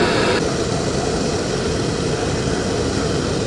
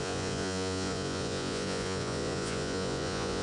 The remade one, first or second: second